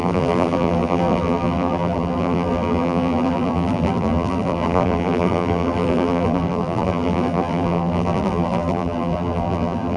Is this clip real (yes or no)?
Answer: no